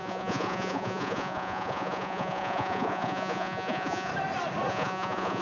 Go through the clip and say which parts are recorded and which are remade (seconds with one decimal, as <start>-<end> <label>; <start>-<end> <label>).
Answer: 0.0-4.1 remade; 4.1-4.7 recorded; 4.7-5.4 remade